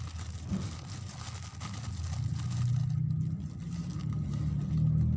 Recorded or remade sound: recorded